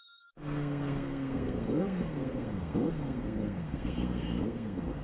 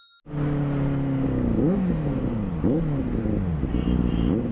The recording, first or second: second